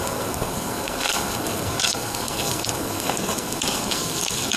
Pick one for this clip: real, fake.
fake